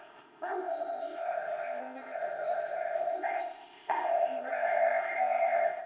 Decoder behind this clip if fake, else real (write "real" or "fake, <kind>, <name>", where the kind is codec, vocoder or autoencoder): fake, codec, ZipCodec